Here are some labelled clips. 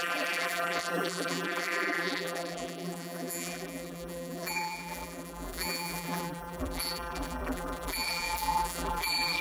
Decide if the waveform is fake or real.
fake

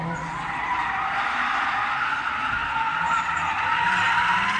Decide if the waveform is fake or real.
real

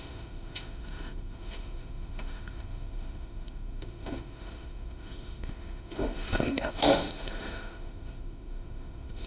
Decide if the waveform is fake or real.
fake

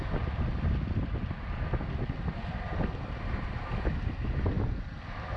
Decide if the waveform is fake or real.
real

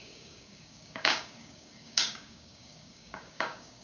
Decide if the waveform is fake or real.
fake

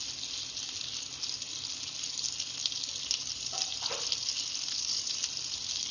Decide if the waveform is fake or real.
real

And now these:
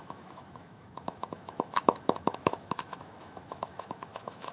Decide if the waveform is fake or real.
fake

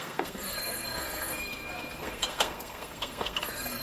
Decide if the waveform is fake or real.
fake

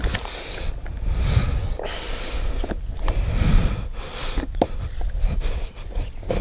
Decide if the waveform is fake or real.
real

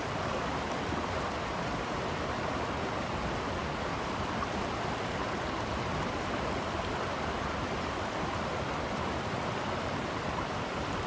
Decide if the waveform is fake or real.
fake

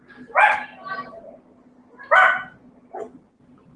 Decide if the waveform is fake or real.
real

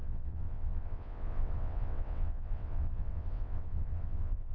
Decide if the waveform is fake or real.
fake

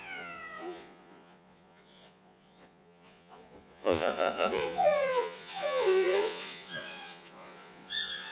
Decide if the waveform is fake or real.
fake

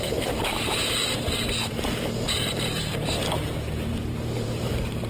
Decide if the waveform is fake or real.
fake